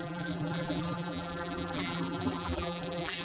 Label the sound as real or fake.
fake